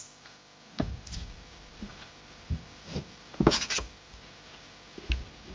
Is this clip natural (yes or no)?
yes